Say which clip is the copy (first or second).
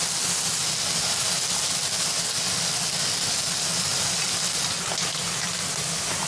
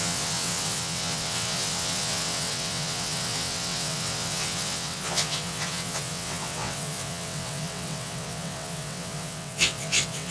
second